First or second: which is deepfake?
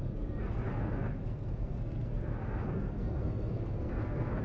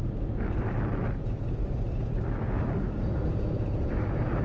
first